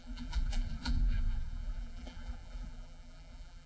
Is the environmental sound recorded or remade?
remade